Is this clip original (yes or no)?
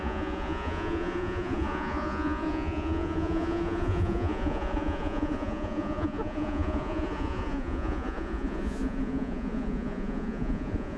no